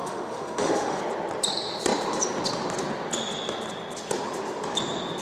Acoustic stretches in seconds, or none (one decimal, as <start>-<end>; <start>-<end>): 1.0-5.2

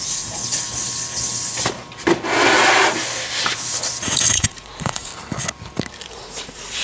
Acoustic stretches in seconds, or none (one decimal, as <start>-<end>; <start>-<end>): 0.4-4.3; 5.1-6.1

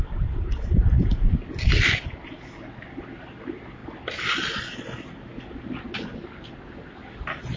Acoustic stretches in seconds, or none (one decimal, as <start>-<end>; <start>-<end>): 0.0-7.6

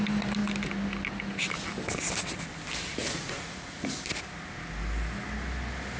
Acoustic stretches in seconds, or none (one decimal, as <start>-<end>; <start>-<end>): 0.0-2.8; 4.0-6.0

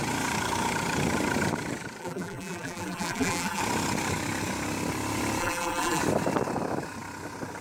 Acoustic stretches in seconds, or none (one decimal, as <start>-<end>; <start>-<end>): 0.0-2.0; 3.6-5.4; 6.0-7.6

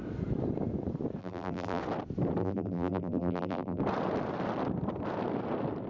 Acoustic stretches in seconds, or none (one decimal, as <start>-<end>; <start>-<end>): 0.0-1.2; 1.8-2.4; 3.8-5.9